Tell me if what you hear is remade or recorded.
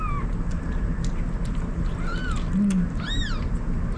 recorded